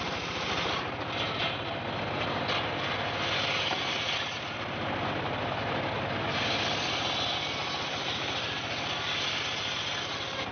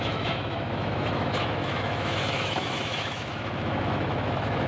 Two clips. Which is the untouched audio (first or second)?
first